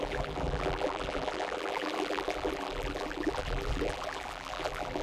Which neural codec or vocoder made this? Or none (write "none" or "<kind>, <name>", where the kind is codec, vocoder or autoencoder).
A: vocoder, BigVGAN v2